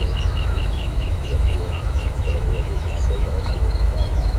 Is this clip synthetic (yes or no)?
yes